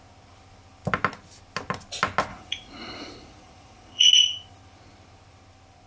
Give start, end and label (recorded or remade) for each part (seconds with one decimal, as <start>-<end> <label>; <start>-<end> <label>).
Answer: 0.0-2.3 recorded; 2.3-4.1 remade; 4.1-5.9 recorded